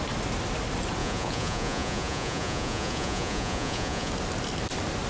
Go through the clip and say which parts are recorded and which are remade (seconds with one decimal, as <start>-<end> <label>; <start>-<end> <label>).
0.0-1.0 recorded; 1.0-4.1 remade; 4.1-5.1 recorded